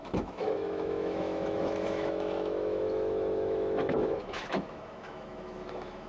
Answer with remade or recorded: remade